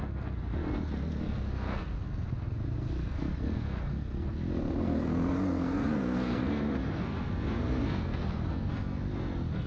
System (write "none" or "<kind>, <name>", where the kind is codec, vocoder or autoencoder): codec, SNAC